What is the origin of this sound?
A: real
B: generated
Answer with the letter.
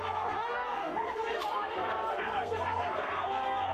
B